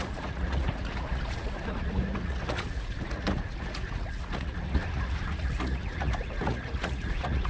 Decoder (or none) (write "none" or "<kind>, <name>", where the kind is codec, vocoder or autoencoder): vocoder, Vocos